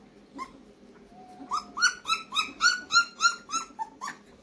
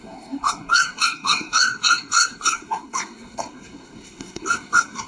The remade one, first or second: second